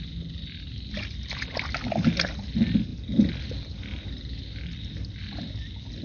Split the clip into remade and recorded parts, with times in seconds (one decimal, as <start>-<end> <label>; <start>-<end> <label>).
0.0-6.0 recorded